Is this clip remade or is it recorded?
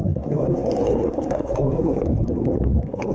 remade